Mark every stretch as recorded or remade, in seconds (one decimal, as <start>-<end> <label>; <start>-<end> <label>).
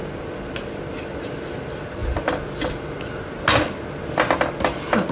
0.0-5.1 recorded